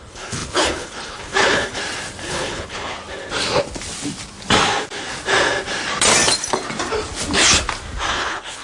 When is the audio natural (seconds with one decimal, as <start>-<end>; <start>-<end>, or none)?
1.8-2.3; 3.0-8.1